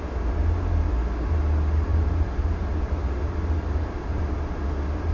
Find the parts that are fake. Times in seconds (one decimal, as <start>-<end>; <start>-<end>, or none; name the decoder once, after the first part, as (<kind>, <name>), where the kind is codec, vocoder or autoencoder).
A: 1.9-4.6 (vocoder, BigVGAN v2)